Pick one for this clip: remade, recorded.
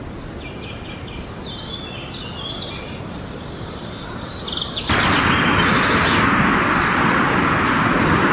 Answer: recorded